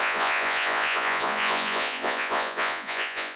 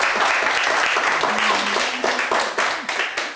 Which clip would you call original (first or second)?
second